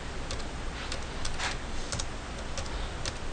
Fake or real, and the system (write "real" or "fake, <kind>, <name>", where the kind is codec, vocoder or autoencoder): real